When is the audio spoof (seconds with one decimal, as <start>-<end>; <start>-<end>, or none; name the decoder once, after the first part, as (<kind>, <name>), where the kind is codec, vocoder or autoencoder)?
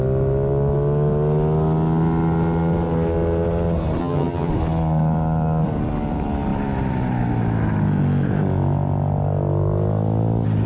4.0-4.5 (vocoder, HiFi-GAN)